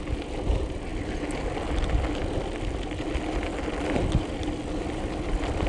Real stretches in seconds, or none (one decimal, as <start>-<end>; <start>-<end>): 0.0-5.7